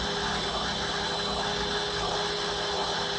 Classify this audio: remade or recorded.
recorded